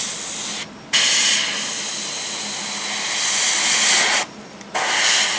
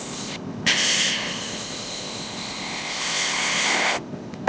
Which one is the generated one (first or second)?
second